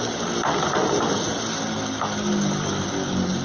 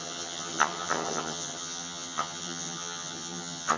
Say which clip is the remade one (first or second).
second